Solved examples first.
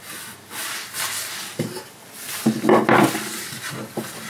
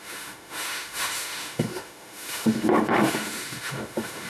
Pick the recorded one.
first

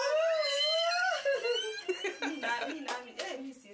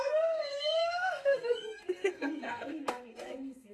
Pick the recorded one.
first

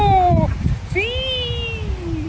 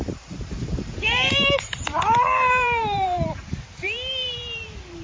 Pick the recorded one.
first